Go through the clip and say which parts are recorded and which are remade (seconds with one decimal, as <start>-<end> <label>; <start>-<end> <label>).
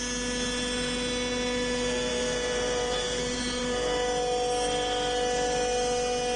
0.0-2.1 recorded; 2.1-3.6 remade; 3.6-6.4 recorded